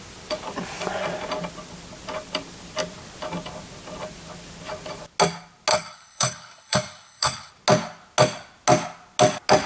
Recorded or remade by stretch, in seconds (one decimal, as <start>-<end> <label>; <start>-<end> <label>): 0.0-5.7 recorded; 5.7-7.5 remade; 7.5-9.7 recorded